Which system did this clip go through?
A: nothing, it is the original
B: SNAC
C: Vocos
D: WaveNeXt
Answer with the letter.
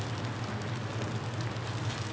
A